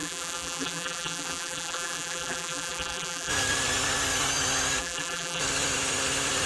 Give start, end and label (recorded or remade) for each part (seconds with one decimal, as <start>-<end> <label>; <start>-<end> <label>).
0.0-3.3 remade; 3.3-4.8 recorded; 4.8-5.4 remade; 5.4-6.5 recorded